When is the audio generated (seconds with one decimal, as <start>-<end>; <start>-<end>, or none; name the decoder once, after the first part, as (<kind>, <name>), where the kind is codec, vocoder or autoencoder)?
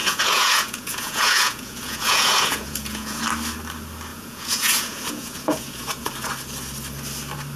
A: 0.0-3.2 (vocoder, Vocos); 4.1-6.1